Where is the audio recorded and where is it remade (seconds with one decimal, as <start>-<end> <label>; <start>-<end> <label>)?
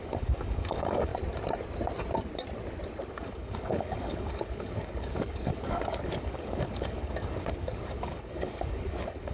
0.0-1.1 remade; 1.1-3.1 recorded; 3.1-9.3 remade